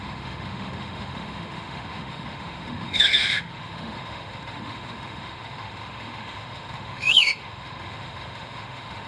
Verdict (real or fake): fake